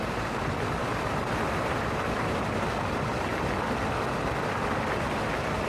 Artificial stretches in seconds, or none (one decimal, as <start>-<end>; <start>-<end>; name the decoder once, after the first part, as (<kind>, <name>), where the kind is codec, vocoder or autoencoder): 0.8-2.5 (vocoder, BigVGAN v2)